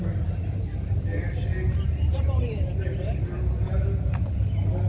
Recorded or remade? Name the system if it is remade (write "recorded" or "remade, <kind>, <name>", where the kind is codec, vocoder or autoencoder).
recorded